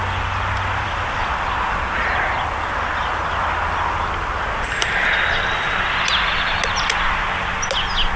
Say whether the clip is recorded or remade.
recorded